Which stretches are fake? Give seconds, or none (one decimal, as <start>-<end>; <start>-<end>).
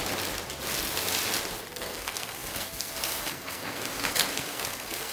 1.7-5.1